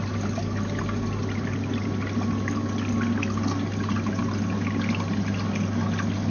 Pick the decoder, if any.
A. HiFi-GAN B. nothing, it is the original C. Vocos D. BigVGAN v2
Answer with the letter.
B